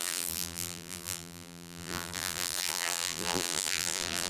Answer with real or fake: fake